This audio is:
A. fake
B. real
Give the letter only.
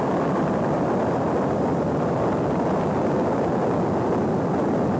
B